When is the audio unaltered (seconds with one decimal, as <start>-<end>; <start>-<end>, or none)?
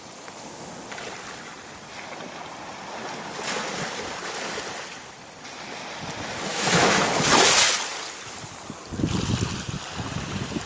0.0-6.5; 7.3-10.7